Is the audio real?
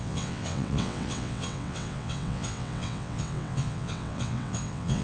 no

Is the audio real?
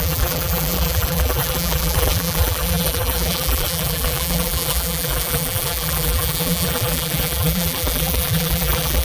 no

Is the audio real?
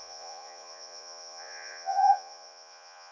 no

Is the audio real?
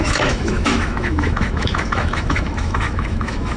no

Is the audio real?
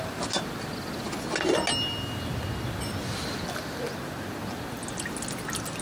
yes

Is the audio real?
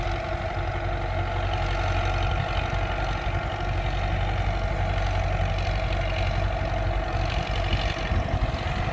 yes